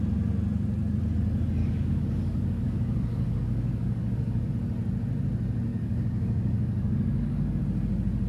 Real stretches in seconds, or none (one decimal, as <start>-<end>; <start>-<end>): 0.0-1.6; 4.5-5.7; 7.6-8.3